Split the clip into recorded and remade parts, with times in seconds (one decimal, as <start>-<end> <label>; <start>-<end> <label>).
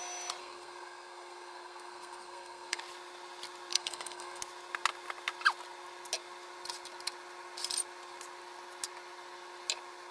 0.0-0.4 recorded; 0.4-2.8 remade; 2.8-3.7 recorded; 3.7-4.4 remade; 4.4-10.1 recorded